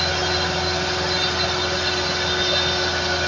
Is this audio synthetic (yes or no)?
no